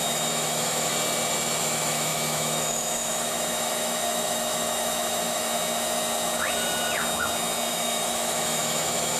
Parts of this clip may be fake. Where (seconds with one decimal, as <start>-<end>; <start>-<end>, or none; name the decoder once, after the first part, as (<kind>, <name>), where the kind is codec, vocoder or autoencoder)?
0.0-0.9 (autoencoder, DAC-VAE); 1.6-5.5; 7.7-9.2

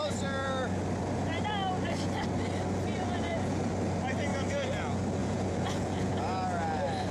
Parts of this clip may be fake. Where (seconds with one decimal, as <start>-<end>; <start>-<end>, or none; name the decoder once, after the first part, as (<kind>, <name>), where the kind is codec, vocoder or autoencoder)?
2.9-3.7 (vocoder, Vocos); 4.3-4.8; 5.2-6.1

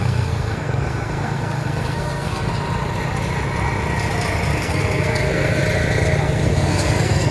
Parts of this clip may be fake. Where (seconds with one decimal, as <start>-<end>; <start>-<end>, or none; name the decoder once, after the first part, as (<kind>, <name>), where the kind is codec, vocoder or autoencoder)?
0.0-2.5 (codec, SNAC); 4.6-5.6; 6.2-7.3

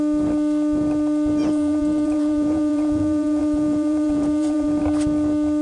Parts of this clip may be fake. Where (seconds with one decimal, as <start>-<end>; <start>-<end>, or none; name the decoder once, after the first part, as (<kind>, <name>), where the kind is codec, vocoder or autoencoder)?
1.4-4.8 (vocoder, Vocos)

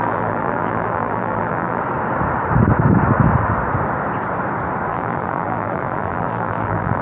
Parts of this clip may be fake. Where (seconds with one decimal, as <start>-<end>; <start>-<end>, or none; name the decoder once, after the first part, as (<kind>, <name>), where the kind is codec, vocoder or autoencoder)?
0.0-1.8 (vocoder, BigVGAN v2); 4.9-7.0

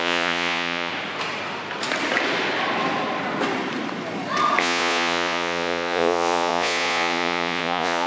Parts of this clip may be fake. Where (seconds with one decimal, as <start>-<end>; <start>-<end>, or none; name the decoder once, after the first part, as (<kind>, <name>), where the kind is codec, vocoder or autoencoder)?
0.0-0.9 (vocoder, Vocos); 4.6-8.1

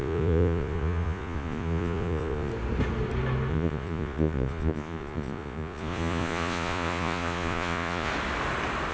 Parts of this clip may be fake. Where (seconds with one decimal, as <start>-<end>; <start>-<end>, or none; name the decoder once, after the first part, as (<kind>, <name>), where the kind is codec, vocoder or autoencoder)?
0.0-2.5 (vocoder, Vocos); 3.5-8.1